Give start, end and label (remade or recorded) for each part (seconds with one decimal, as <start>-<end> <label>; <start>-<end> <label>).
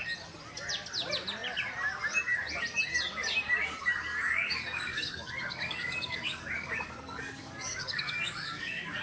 0.0-4.1 recorded; 4.1-9.0 remade